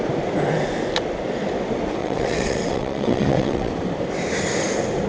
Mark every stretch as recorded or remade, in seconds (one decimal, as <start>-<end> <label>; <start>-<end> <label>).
0.0-2.0 recorded; 2.0-3.7 remade; 3.7-5.1 recorded